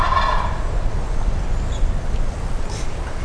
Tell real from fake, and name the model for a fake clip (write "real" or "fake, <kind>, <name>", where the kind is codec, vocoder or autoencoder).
real